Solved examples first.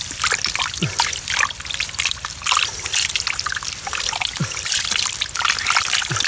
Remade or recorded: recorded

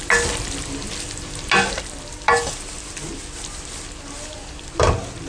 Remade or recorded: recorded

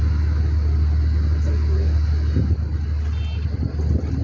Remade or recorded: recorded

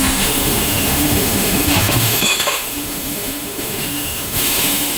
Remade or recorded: remade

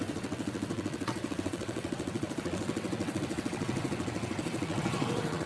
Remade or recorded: remade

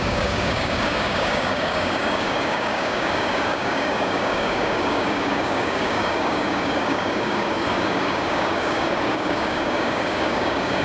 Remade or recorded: remade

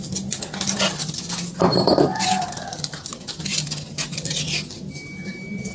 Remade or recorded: recorded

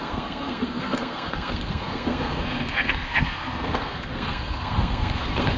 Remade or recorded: remade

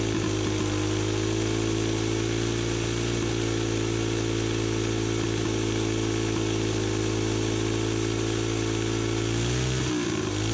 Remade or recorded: recorded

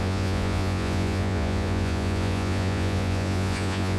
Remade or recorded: remade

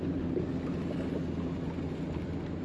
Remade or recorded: recorded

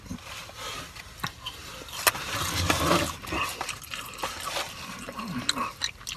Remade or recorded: recorded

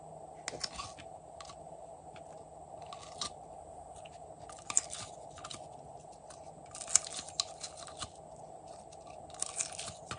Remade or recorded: recorded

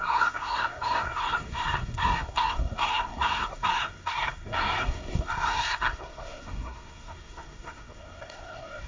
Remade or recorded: remade